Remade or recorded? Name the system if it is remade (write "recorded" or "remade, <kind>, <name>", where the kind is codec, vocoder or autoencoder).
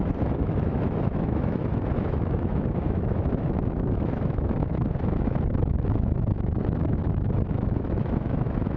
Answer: remade, autoencoder, DAC-VAE